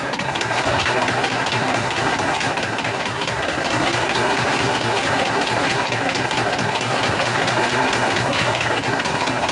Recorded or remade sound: remade